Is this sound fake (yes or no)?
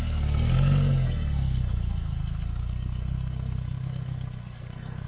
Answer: yes